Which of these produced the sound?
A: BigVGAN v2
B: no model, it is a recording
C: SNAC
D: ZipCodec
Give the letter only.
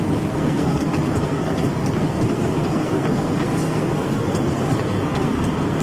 C